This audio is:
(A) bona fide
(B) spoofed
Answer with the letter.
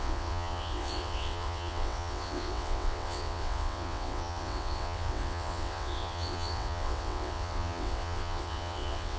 B